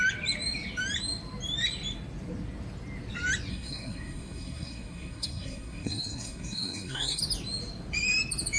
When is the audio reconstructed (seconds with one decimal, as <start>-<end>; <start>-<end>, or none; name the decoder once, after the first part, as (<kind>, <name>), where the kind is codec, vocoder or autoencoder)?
3.5-7.2 (codec, SNAC)